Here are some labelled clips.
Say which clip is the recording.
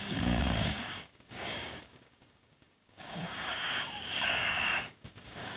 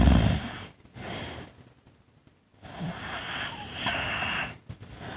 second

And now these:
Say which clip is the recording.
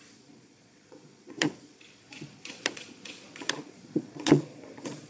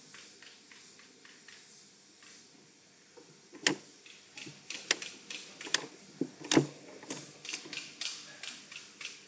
second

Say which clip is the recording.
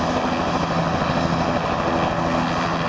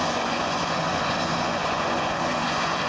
first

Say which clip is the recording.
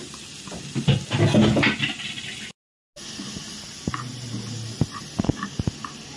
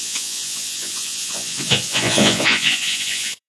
first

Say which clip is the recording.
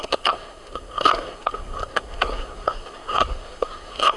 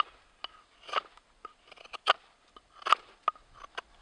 second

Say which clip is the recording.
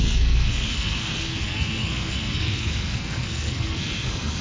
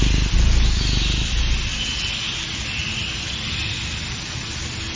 second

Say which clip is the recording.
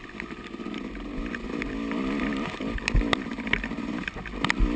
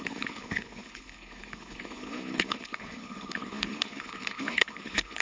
first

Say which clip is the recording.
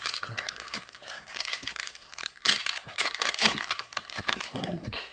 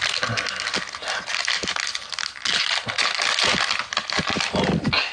second